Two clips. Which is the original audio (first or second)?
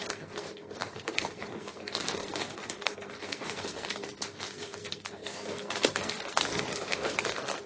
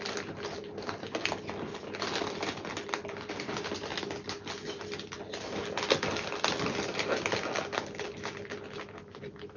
second